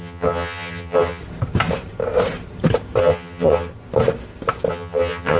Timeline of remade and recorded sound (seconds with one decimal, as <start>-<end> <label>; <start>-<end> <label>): 0.0-1.2 remade; 1.2-3.0 recorded; 3.0-3.7 remade; 3.7-4.7 recorded; 4.7-5.4 remade